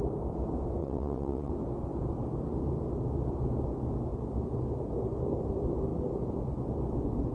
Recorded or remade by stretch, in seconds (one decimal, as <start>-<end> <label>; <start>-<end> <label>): 0.0-0.8 recorded; 0.8-1.5 remade; 1.5-7.3 recorded